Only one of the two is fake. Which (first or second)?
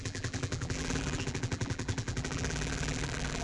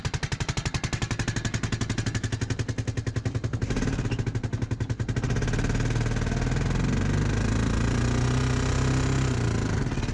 first